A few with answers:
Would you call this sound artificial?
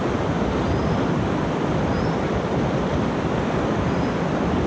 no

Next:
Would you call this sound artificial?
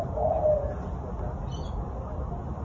no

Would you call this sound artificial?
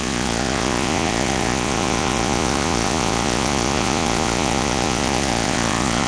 yes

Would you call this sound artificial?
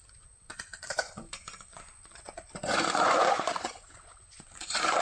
yes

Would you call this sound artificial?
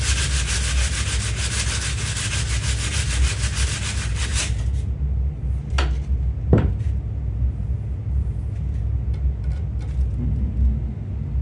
no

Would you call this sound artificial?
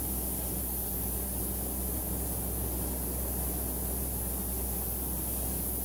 no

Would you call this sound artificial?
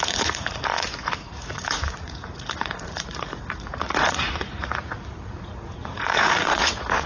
yes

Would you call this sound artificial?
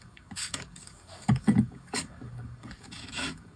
yes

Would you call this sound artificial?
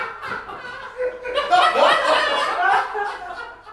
no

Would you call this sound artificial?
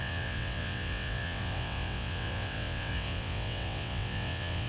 yes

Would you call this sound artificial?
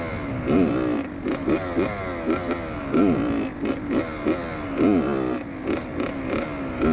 no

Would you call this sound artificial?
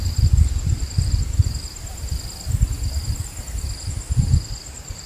no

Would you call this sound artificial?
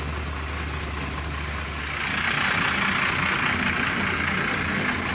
no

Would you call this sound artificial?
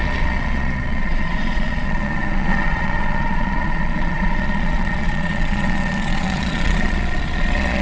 yes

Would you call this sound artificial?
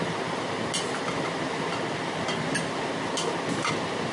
no